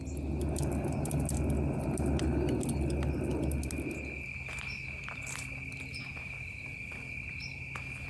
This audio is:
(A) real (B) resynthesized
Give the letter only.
A